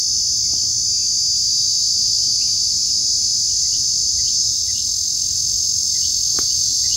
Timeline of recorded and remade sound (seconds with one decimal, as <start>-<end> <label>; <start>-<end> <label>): 0.0-0.7 remade; 0.7-3.6 recorded; 3.6-7.0 remade